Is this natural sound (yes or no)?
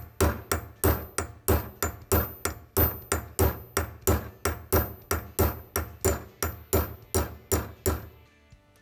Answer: yes